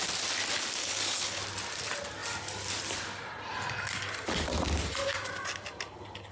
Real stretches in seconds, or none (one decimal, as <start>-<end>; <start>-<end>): 0.0-0.8; 1.4-6.3